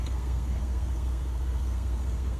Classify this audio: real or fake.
fake